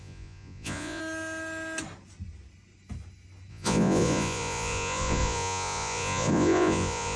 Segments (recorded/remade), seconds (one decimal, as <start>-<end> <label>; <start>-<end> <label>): 0.0-1.0 remade; 1.0-3.5 recorded; 3.5-7.2 remade